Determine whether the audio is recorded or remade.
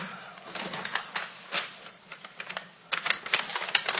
recorded